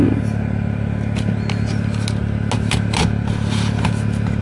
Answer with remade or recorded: recorded